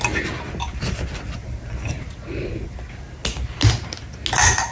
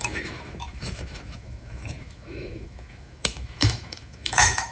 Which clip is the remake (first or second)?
second